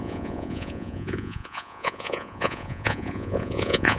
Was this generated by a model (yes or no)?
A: yes